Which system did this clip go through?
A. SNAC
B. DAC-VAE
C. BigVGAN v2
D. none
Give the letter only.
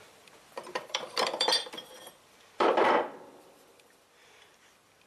C